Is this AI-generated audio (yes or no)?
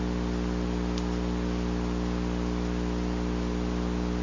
no